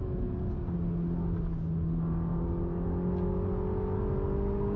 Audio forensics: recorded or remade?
recorded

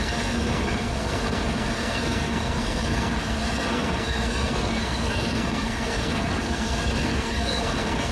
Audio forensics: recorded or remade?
remade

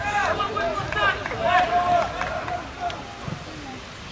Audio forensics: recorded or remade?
recorded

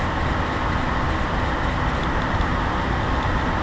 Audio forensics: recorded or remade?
recorded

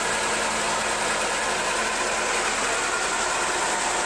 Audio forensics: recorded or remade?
recorded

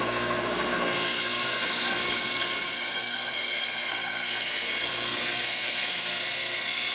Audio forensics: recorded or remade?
remade